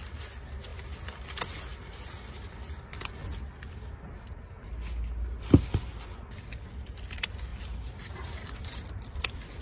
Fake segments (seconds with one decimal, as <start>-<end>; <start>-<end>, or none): 7.5-8.5